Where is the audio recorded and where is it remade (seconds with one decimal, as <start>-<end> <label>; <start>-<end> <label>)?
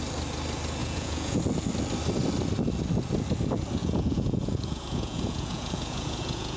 0.0-0.8 recorded; 0.8-1.4 remade; 1.4-3.8 recorded; 3.8-6.6 remade